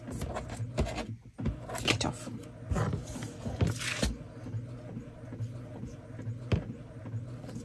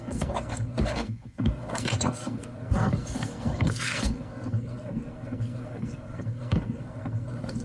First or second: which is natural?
first